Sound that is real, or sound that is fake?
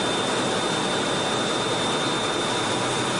real